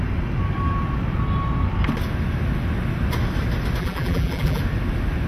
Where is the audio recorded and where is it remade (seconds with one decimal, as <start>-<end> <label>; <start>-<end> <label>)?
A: 0.0-3.8 recorded; 3.8-4.6 remade; 4.6-5.3 recorded